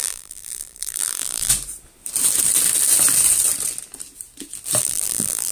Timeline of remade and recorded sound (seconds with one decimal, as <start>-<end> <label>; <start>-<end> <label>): 0.0-1.5 remade; 1.5-4.8 recorded; 4.8-5.5 remade